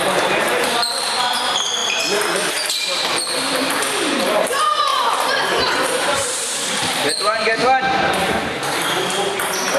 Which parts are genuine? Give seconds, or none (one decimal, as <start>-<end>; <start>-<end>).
none